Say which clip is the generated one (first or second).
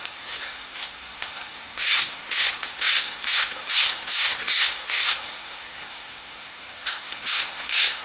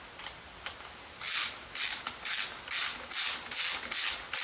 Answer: first